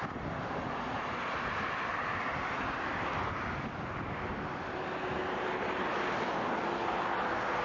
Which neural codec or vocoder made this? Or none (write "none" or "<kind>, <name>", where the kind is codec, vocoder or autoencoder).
none